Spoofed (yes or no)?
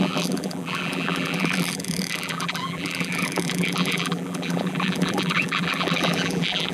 yes